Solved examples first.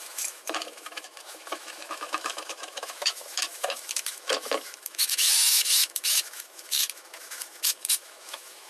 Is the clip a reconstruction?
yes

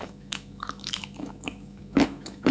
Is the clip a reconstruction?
yes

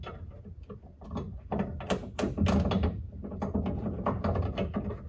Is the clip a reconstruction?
no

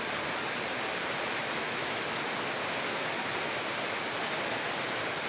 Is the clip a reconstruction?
no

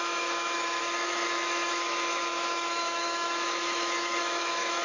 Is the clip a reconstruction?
yes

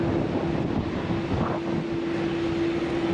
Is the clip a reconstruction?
no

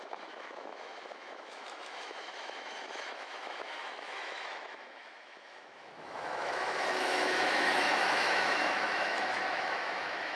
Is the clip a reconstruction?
yes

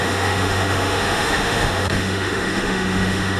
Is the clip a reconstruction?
yes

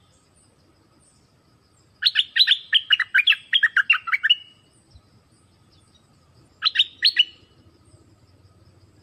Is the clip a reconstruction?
no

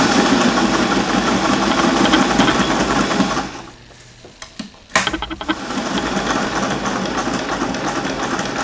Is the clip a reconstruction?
no